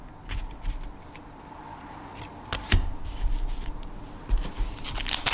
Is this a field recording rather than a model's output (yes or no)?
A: yes